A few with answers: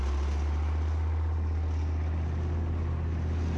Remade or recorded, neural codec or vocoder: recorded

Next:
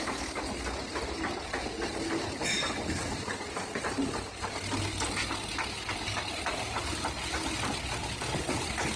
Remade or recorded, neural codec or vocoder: recorded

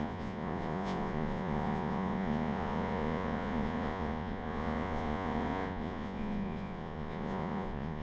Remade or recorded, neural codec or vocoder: remade, vocoder, Vocos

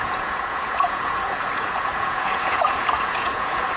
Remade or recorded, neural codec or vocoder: remade, vocoder, Vocos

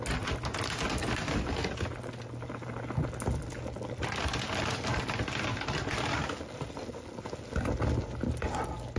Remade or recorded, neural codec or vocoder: recorded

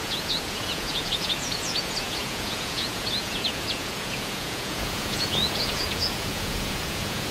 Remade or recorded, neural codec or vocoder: remade, vocoder, Vocos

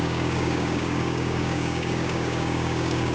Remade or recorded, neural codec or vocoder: remade, codec, DAC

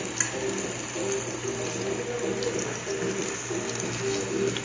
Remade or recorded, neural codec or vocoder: recorded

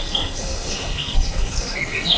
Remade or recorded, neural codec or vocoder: remade, codec, SNAC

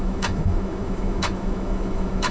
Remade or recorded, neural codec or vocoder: remade, autoencoder, DAC-VAE